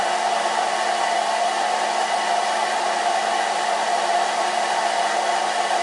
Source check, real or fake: real